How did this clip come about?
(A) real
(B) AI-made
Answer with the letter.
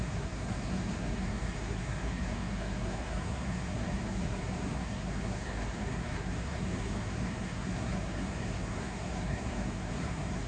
B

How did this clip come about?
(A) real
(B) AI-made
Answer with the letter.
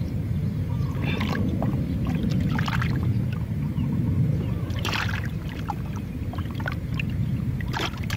B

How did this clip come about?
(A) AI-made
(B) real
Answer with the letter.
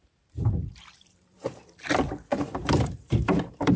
A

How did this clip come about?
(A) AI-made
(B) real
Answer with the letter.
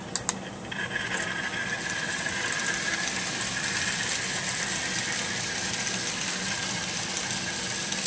B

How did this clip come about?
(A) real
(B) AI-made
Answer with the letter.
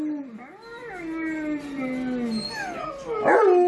A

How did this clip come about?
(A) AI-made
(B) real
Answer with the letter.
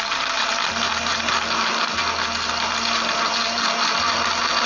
B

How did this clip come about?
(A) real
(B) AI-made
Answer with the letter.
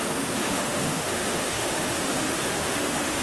B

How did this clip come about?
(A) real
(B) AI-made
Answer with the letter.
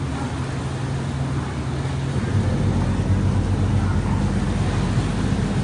A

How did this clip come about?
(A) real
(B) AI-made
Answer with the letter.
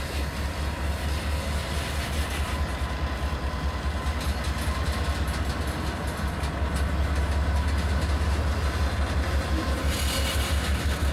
A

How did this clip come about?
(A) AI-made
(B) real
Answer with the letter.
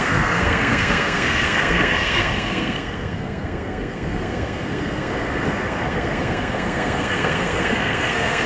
A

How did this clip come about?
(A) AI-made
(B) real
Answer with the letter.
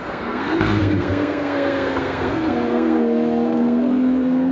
A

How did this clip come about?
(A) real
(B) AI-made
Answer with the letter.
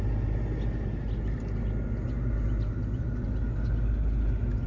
A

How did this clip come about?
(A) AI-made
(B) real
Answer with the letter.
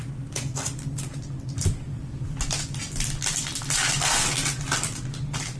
B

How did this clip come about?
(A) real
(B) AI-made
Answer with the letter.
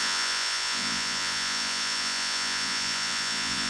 B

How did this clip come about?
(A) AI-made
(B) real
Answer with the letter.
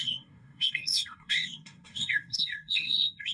A